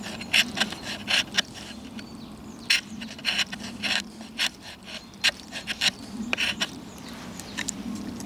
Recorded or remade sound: recorded